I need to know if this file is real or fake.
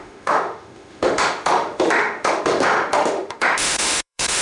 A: fake